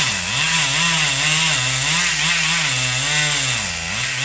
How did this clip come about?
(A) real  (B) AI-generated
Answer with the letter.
A